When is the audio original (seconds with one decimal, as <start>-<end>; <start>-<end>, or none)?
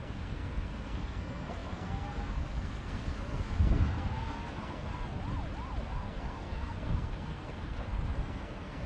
5.2-5.8